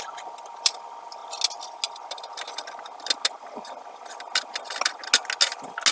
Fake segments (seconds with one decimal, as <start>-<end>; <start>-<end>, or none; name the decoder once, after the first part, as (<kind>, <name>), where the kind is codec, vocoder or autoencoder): none